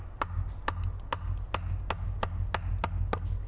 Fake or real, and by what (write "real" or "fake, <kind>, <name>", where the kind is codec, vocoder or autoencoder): real